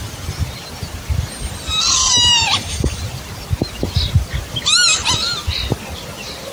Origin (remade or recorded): recorded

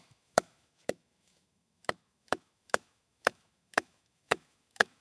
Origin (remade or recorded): remade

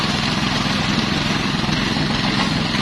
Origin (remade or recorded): recorded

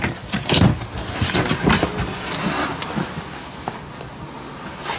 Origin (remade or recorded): recorded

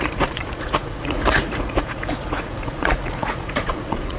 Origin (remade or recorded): remade